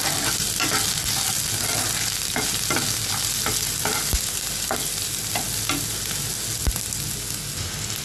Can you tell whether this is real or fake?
real